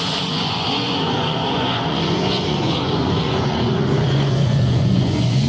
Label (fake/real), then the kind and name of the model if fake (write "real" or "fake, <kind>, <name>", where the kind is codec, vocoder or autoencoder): fake, vocoder, Vocos